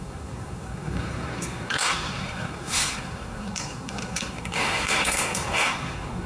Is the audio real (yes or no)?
no